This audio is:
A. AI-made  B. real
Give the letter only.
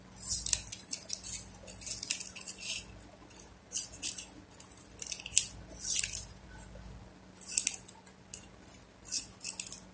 B